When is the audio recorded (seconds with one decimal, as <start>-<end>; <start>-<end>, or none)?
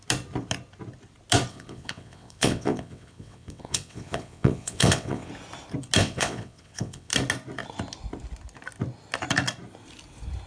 0.0-1.5; 5.3-6.0; 7.1-10.5